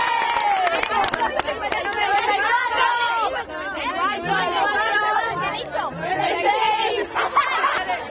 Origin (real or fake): real